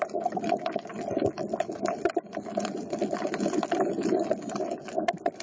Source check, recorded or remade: remade